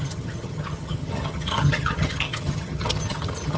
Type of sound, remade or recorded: remade